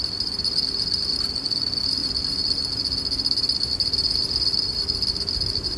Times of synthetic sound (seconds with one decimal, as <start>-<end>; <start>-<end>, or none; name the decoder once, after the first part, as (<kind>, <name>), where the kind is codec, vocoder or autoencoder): none